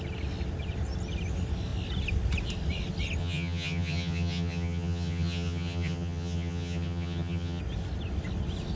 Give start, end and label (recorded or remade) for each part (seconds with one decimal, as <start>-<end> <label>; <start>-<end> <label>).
0.0-3.2 recorded; 3.2-7.6 remade; 7.6-8.8 recorded